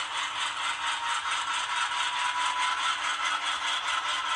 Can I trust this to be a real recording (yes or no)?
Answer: yes